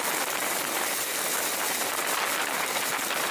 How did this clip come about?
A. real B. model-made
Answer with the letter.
A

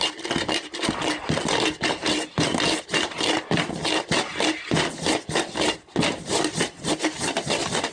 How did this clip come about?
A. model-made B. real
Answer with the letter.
B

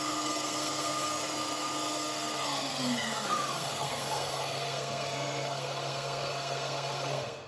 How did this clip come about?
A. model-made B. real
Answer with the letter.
A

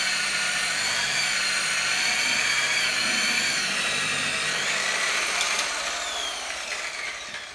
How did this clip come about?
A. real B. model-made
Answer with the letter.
B